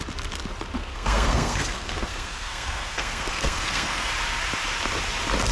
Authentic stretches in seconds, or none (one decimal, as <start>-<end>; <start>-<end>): 0.0-0.8; 4.1-5.5

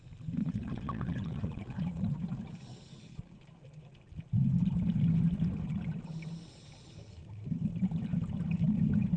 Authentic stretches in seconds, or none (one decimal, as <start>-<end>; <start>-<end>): 0.0-0.4; 2.0-9.2

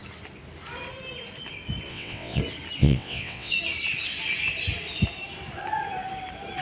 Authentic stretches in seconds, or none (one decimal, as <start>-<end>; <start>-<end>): 0.0-1.9; 2.4-2.8; 3.5-6.6

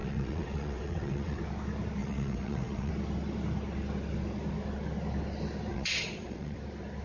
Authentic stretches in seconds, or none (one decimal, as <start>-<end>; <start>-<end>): 1.4-2.0; 2.9-5.7; 6.6-7.0

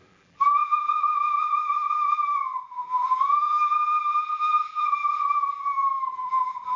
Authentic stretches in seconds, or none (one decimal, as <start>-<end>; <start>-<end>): none

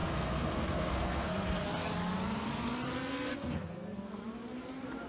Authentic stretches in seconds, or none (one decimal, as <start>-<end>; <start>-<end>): 1.7-3.3; 4.2-5.1

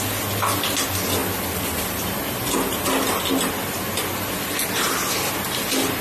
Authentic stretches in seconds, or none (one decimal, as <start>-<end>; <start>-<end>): 0.0-6.0

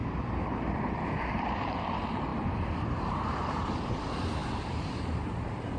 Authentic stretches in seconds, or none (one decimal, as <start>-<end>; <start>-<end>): none